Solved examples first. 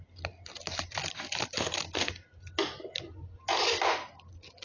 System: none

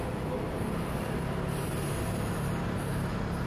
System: none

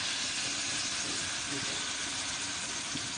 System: none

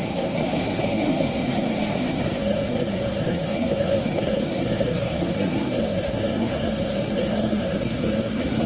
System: codec, SNAC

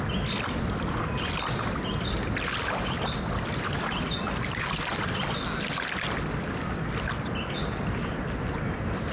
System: none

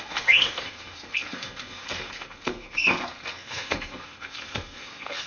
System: codec, SNAC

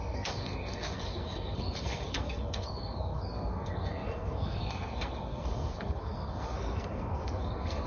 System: codec, SNAC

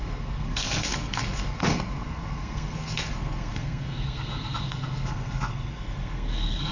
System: codec, SNAC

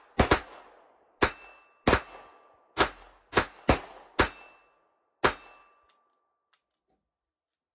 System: none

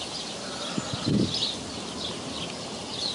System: none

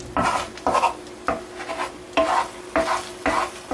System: none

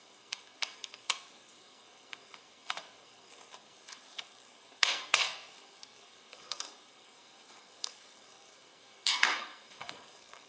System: codec, SNAC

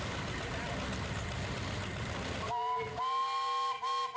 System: none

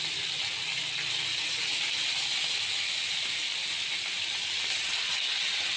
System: none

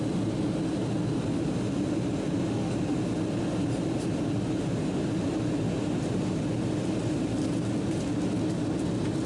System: none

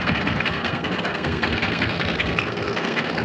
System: codec, SNAC